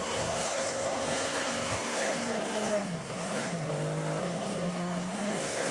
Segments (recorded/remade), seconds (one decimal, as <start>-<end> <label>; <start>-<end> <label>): 0.0-3.7 remade; 3.7-4.2 recorded; 4.2-5.7 remade